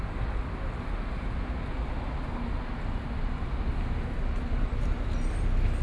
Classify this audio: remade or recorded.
recorded